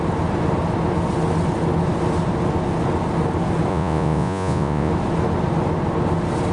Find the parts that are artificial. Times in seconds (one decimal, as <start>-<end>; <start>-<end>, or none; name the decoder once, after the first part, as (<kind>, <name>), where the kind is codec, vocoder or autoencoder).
3.7-4.9 (vocoder, Vocos)